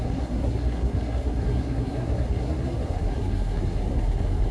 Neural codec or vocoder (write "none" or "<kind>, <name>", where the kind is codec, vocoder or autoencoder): codec, SNAC